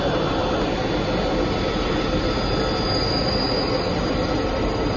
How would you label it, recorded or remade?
recorded